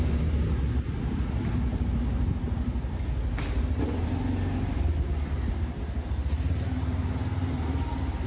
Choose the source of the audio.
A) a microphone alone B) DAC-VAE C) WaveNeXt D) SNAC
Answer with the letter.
A